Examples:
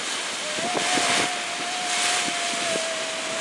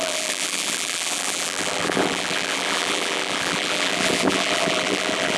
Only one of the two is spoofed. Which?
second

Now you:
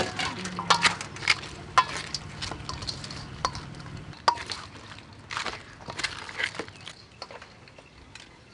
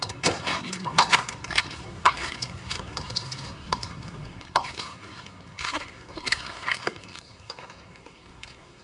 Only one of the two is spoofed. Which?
second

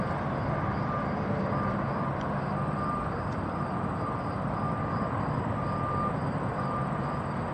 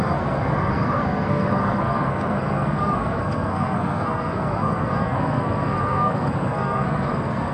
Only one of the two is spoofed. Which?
second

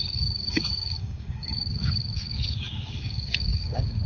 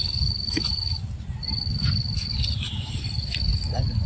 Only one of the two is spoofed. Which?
first